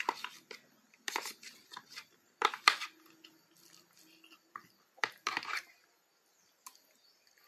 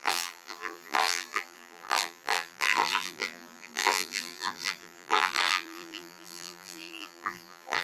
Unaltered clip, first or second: first